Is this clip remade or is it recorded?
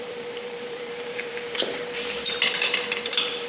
remade